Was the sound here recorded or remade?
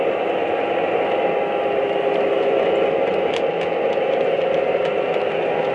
recorded